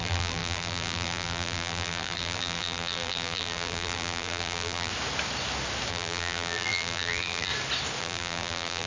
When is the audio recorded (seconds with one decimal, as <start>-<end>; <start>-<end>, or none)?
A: 4.9-5.9; 7.5-8.0

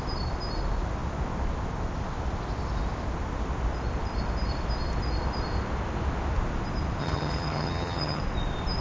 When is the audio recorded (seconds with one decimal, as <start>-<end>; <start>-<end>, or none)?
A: 0.0-7.0; 8.2-8.8

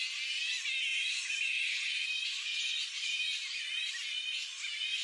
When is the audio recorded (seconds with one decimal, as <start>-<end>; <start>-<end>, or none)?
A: 0.0-0.9; 3.9-5.0

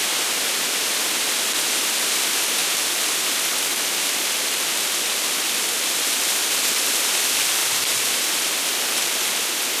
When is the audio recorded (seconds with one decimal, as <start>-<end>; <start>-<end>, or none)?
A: 0.0-7.6; 8.5-9.8